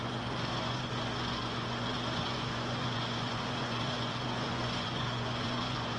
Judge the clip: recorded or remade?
remade